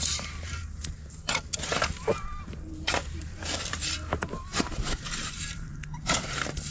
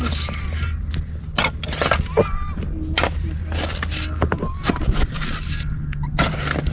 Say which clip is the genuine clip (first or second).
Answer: second